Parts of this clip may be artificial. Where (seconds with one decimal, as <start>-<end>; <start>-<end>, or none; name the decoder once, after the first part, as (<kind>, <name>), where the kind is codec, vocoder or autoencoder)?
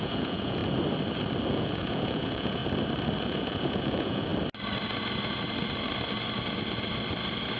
0.0-0.6 (vocoder, Vocos); 1.5-2.6; 3.2-4.3